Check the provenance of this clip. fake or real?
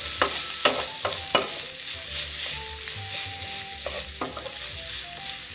real